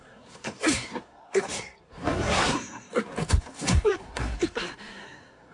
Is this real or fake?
fake